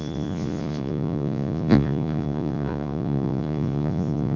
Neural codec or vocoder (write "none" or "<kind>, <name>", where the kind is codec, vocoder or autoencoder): vocoder, Vocos